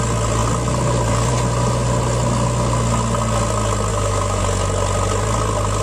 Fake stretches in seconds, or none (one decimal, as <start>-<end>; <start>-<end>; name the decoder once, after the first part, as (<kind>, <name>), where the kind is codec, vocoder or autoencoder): 3.9-4.4 (autoencoder, DAC-VAE)